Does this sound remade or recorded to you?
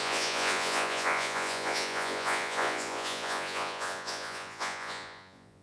remade